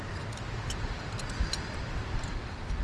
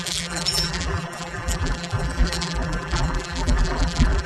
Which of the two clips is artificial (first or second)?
second